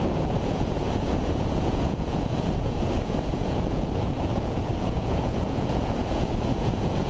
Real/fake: fake